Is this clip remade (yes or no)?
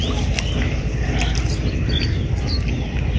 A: no